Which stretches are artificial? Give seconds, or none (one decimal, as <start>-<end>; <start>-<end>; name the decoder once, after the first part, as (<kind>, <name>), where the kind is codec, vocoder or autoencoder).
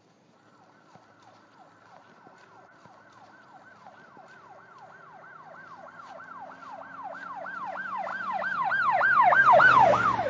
5.8-7.5 (vocoder, BigVGAN v2); 8.1-8.7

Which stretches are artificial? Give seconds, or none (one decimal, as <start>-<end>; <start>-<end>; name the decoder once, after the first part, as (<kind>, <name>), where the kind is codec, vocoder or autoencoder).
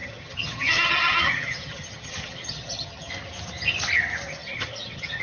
0.0-3.1 (vocoder, HiFi-GAN); 4.4-5.2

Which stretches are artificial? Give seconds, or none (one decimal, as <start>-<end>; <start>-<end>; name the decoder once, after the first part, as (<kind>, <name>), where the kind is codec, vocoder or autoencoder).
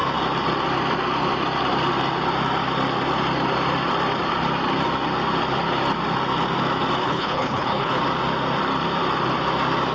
7.0-8.0 (codec, HILCodec)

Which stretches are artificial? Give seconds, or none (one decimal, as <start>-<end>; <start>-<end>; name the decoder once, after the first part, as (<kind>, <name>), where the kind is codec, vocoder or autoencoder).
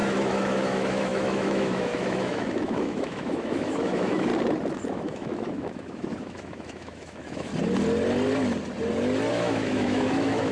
0.0-4.3 (autoencoder, DAC-VAE); 4.9-7.5; 9.3-10.5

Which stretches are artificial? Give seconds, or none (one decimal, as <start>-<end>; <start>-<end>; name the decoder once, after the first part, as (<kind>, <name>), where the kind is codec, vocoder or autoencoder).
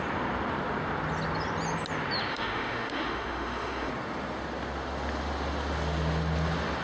2.3-3.9 (autoencoder, DAC-VAE)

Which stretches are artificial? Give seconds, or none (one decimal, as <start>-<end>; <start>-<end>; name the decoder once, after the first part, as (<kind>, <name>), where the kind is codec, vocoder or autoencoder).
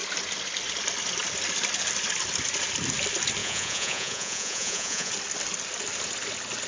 3.4-5.1 (vocoder, Vocos)